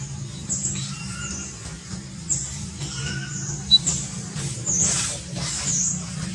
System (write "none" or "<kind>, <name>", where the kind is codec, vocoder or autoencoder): vocoder, BigVGAN v2